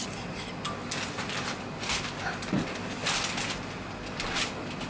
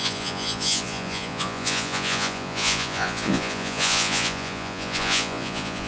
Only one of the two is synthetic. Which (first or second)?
second